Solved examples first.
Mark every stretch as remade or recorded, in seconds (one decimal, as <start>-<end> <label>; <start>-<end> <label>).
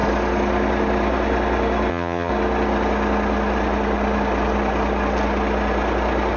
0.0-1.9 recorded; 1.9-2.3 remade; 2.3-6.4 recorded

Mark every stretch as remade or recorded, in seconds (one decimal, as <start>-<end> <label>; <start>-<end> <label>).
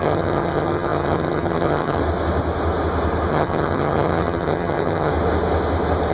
0.0-2.0 remade; 2.0-3.3 recorded; 3.3-5.1 remade; 5.1-6.1 recorded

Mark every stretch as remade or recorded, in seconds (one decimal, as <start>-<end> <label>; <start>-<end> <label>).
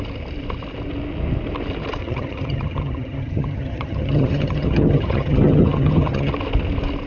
0.0-2.0 recorded; 2.0-6.3 remade; 6.3-7.1 recorded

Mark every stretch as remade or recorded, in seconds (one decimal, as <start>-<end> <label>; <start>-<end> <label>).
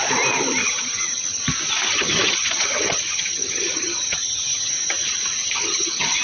0.0-0.6 recorded; 0.6-1.4 remade; 1.4-1.9 recorded; 1.9-4.7 remade; 4.7-5.4 recorded; 5.4-6.2 remade